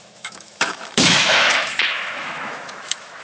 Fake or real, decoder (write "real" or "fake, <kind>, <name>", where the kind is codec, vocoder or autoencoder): fake, autoencoder, DAC-VAE